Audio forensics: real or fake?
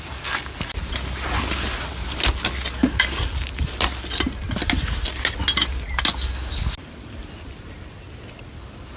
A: real